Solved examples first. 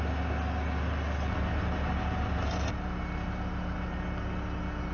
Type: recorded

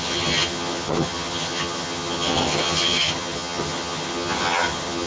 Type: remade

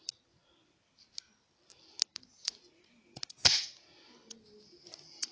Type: recorded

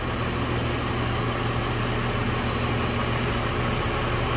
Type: recorded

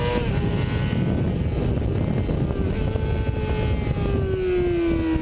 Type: recorded